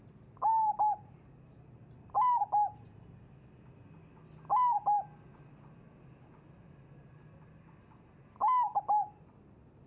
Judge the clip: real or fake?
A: real